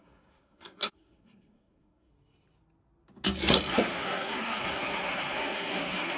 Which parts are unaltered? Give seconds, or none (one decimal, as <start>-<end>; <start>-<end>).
2.1-3.7